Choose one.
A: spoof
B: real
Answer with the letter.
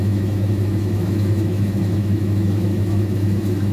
A